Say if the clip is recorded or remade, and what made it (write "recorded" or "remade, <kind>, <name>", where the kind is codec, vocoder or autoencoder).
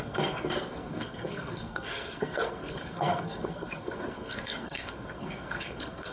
remade, codec, SNAC